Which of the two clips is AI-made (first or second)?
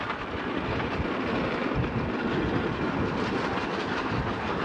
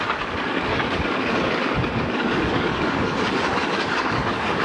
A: second